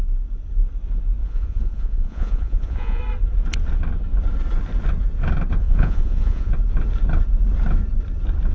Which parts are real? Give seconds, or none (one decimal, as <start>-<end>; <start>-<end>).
0.0-1.2; 3.0-5.6; 6.5-8.5